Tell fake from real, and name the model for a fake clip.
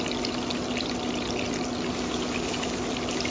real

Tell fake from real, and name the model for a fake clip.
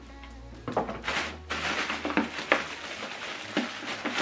real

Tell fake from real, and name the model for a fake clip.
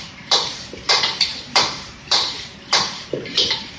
fake, vocoder, BigVGAN v2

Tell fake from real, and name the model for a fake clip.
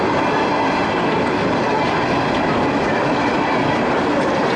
real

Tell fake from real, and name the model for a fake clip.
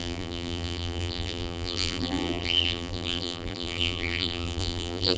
fake, vocoder, BigVGAN v2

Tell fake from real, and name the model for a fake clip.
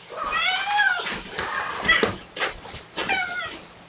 fake, vocoder, BigVGAN v2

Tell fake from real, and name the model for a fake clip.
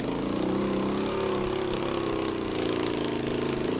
real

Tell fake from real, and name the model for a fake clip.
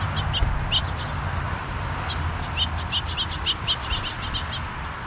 real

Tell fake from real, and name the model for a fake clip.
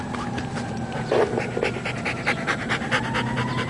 real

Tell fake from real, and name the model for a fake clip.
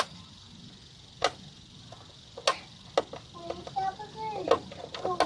real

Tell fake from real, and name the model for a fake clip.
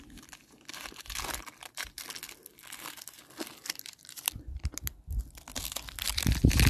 real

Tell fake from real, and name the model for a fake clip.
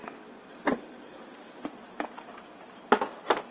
real